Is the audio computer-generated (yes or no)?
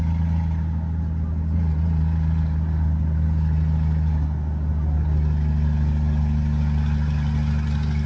no